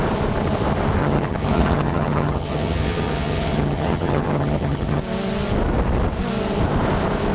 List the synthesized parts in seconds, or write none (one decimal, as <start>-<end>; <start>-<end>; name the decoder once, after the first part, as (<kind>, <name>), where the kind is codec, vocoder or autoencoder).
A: 1.0-5.0 (vocoder, HiFi-GAN)

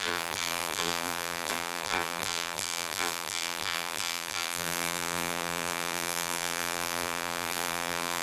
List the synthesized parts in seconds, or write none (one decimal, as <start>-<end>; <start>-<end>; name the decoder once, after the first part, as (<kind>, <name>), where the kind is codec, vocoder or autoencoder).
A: 0.0-8.2 (vocoder, BigVGAN v2)